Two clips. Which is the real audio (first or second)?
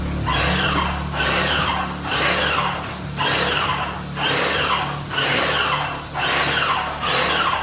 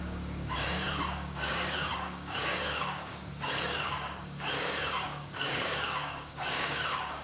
first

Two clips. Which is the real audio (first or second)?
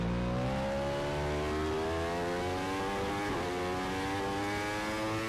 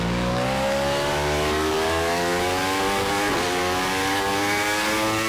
first